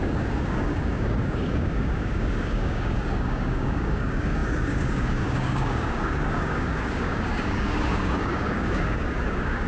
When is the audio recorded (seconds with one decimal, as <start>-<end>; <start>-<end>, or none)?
none